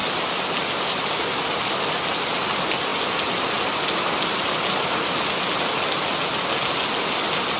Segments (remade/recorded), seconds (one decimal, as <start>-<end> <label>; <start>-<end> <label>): 0.0-7.6 recorded